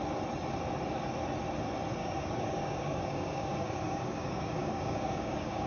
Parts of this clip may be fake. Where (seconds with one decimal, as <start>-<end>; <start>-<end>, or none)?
2.0-5.7